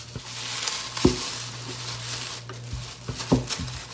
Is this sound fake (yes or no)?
no